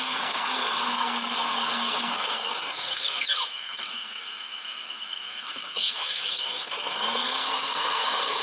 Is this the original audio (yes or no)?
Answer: no